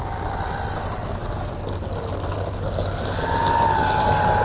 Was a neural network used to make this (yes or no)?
no